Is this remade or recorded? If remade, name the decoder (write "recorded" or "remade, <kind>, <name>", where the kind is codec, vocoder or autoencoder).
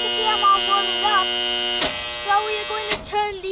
recorded